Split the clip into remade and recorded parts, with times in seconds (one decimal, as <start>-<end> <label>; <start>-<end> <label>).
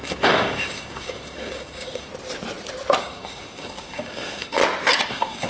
0.0-2.1 remade; 2.1-3.0 recorded; 3.0-4.6 remade; 4.6-5.1 recorded; 5.1-5.5 remade